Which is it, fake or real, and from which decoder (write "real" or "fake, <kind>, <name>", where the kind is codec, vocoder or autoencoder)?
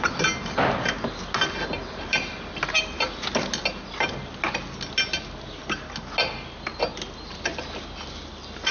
real